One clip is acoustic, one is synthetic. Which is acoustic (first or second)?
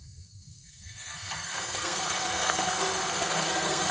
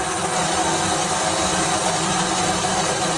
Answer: second